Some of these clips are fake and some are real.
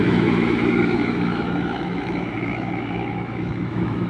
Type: fake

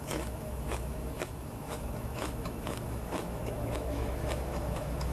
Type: fake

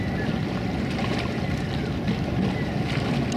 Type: real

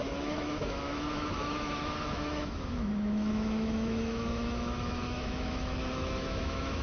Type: fake